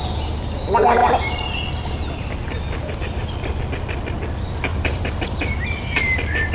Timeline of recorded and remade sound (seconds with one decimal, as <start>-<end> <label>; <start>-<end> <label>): 0.0-4.7 recorded; 4.7-5.5 remade; 5.5-6.5 recorded